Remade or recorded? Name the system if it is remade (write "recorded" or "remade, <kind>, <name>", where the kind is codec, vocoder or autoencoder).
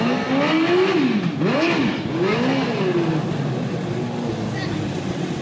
recorded